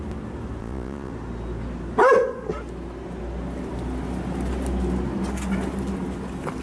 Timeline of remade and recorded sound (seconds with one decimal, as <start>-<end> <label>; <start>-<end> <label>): 0.0-0.6 recorded; 0.6-1.1 remade; 1.1-6.6 recorded